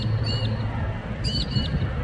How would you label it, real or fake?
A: real